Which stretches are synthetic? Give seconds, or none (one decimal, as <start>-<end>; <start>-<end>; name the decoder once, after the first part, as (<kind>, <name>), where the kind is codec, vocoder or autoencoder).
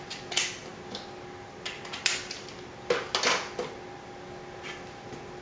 none